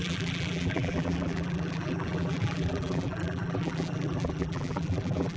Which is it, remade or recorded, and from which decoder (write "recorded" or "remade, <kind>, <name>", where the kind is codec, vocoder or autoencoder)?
remade, vocoder, BigVGAN v2